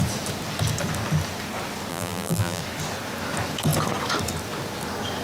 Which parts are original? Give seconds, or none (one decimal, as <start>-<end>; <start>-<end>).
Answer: 0.0-1.9; 2.6-5.2